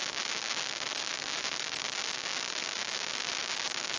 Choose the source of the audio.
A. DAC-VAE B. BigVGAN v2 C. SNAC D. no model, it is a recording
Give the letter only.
D